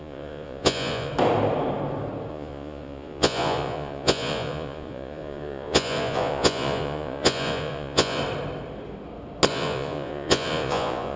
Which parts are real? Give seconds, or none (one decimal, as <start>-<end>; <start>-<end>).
1.1-2.3; 8.2-9.5